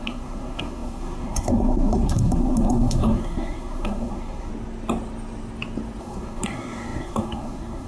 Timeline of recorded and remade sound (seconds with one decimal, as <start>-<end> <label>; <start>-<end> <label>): 0.0-4.5 remade; 4.5-6.0 recorded; 6.0-7.9 remade